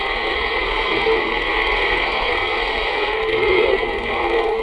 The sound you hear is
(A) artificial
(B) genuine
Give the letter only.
A